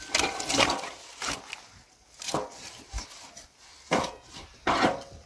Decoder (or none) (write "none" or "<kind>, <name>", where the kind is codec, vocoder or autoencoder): none